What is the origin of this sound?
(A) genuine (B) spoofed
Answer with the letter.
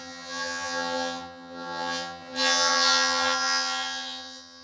B